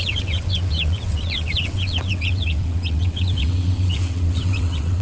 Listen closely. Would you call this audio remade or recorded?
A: remade